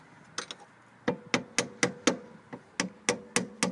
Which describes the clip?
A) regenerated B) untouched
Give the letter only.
B